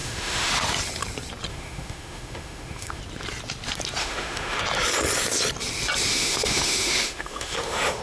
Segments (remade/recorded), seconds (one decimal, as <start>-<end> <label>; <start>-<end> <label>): 0.0-0.5 remade; 0.5-1.5 recorded; 1.5-3.0 remade; 3.0-4.0 recorded; 4.0-4.6 remade; 4.6-6.1 recorded; 6.1-8.0 remade